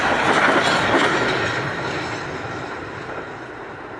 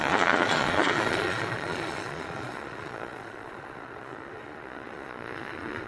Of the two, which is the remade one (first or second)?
second